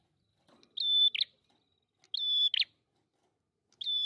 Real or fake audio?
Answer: real